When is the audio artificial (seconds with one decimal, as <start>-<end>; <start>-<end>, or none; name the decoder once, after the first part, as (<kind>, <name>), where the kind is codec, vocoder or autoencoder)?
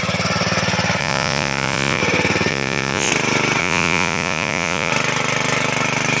1.0-2.0 (vocoder, Vocos); 2.5-3.1; 3.6-4.9